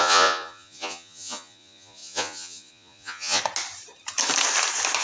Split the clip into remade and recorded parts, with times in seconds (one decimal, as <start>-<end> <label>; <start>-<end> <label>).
0.0-3.4 remade; 3.4-5.0 recorded